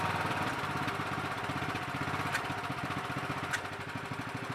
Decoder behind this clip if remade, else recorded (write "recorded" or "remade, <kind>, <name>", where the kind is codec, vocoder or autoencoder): recorded